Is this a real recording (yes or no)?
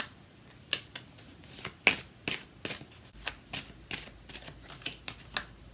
yes